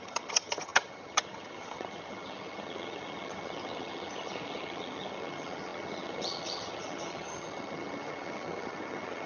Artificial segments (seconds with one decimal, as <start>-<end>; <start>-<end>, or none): 0.0-9.3